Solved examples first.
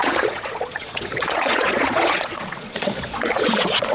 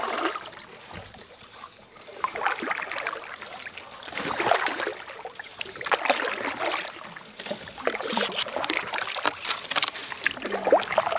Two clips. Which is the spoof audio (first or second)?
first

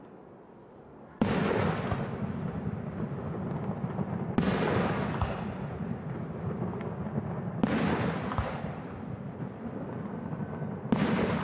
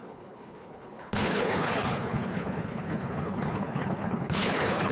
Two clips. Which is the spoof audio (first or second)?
second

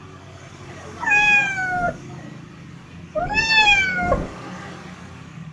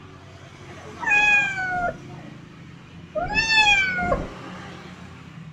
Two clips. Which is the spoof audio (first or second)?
first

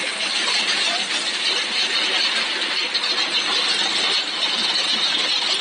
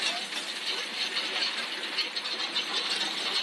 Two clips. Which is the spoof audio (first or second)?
first